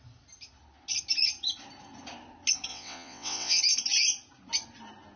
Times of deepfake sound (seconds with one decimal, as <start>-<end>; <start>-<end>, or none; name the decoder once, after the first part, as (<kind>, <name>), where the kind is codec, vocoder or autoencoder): 2.7-3.6 (vocoder, WaveNeXt)